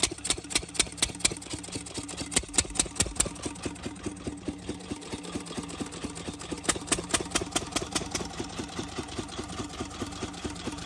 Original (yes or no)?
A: yes